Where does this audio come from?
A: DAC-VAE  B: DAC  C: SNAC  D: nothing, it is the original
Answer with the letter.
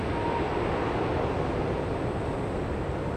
D